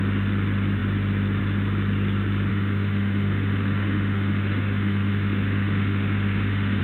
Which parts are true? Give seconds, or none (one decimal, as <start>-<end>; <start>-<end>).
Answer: 0.0-2.5

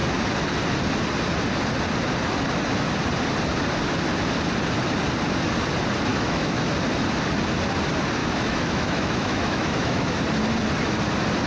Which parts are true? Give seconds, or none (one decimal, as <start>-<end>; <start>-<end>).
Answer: 0.0-6.1; 6.6-8.2; 10.2-11.5